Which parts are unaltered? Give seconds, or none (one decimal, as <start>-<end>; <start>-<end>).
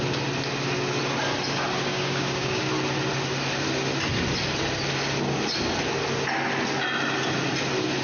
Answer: 0.0-1.9; 2.6-8.0